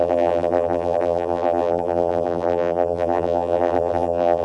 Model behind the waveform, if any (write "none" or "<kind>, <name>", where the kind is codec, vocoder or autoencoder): vocoder, BigVGAN v2